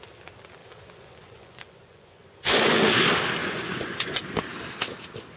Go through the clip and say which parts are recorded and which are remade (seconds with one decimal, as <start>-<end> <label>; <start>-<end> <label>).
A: 0.0-0.6 recorded; 0.6-2.7 remade; 2.7-3.4 recorded; 3.4-4.2 remade; 4.2-5.4 recorded